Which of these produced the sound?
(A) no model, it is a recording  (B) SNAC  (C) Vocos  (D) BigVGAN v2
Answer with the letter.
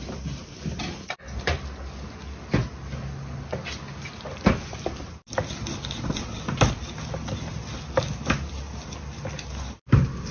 A